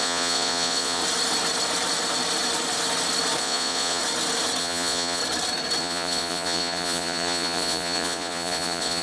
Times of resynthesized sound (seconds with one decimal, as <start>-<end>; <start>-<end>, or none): 0.0-1.0; 3.4-4.0; 4.6-5.2; 5.8-9.0